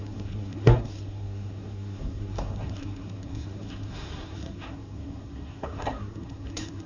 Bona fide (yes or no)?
no